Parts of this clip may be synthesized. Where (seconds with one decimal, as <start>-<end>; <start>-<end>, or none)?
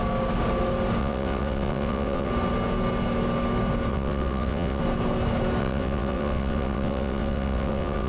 1.0-2.3; 3.9-4.8; 5.6-8.1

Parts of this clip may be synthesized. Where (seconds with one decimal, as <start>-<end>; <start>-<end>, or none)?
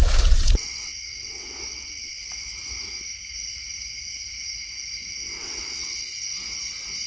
0.0-2.1; 5.4-6.0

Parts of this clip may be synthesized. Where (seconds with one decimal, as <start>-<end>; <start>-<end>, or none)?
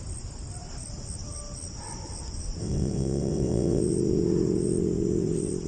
2.6-3.8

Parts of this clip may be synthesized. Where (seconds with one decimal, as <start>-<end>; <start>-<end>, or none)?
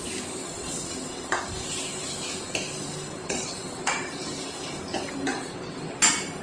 0.4-1.4; 3.2-4.1; 5.3-6.0